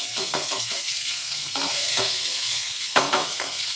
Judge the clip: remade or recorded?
remade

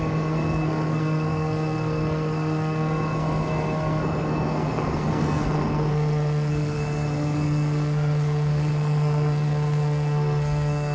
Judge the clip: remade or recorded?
remade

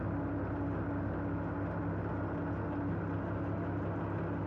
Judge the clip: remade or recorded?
recorded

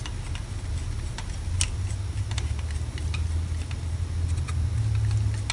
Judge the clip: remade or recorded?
recorded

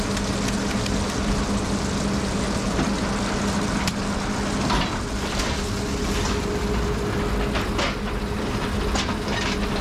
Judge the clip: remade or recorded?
recorded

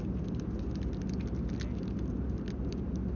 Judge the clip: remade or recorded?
recorded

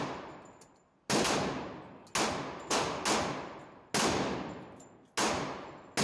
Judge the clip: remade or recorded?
recorded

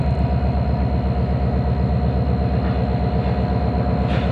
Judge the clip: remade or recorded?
recorded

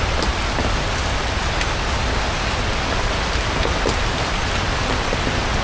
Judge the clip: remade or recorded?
recorded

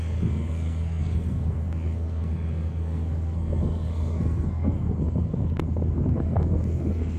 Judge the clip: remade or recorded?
remade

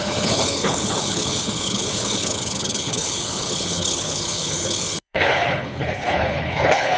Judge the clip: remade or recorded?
remade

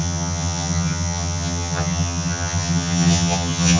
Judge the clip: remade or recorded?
remade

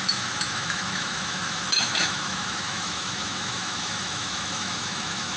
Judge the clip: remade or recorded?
remade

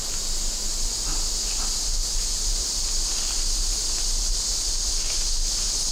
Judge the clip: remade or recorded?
recorded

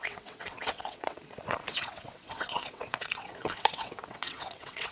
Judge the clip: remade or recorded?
remade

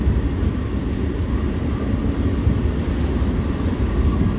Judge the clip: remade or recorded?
recorded